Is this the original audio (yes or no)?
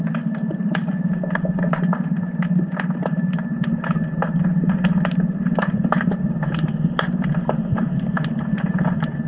yes